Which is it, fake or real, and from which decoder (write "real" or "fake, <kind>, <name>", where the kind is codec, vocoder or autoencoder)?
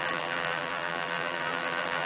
fake, vocoder, BigVGAN v2